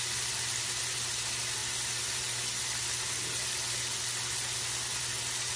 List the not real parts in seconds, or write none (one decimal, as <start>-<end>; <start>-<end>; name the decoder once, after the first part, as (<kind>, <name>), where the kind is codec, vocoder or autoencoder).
none